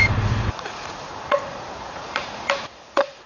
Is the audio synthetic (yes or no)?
yes